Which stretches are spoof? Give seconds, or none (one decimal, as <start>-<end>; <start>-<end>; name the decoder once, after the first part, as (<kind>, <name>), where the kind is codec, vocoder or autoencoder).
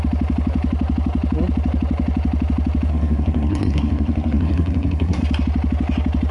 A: 2.9-5.2 (codec, SNAC)